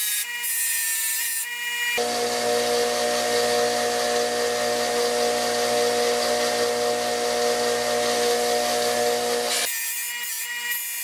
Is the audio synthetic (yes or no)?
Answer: no